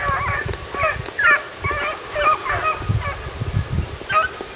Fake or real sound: real